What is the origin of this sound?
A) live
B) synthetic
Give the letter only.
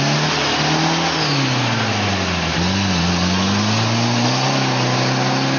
A